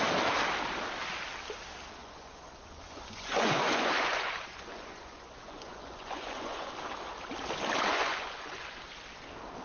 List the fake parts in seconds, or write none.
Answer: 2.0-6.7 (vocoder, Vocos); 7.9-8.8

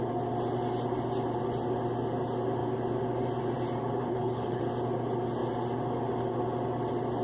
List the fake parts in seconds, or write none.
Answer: 4.0-4.6 (codec, HILCodec)

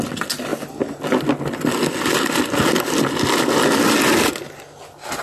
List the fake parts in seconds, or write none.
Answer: none

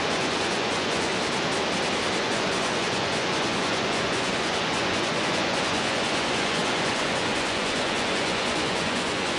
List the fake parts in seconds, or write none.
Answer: 0.0-1.1 (vocoder, Vocos); 2.2-9.4

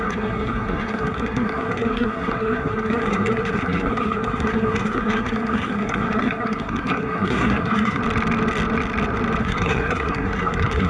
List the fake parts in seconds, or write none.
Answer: 0.0-8.0 (codec, SNAC); 9.4-10.9